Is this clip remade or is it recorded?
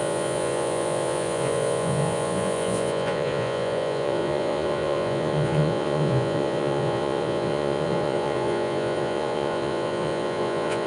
remade